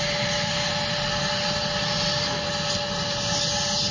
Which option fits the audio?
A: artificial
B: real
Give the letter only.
B